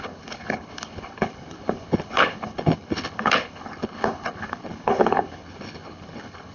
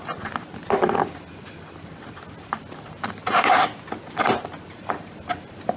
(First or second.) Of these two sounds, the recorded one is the second